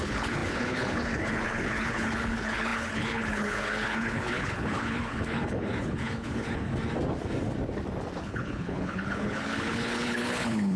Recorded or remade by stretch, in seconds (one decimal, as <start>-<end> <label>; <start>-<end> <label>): 0.0-6.7 remade; 6.7-8.2 recorded; 8.2-10.8 remade